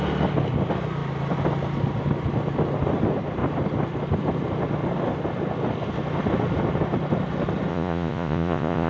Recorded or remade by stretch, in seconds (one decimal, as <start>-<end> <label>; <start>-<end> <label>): 0.0-7.7 recorded; 7.7-8.9 remade